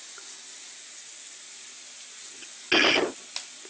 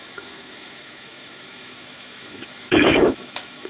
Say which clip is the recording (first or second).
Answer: first